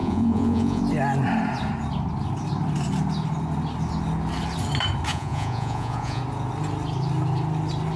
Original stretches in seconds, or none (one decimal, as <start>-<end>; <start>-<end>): 0.8-5.1; 6.2-8.0